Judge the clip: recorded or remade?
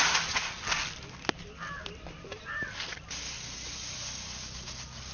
recorded